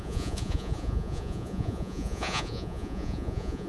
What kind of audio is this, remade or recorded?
remade